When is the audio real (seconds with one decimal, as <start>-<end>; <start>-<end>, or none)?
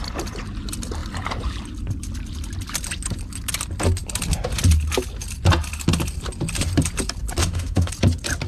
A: 0.0-7.4; 7.9-8.5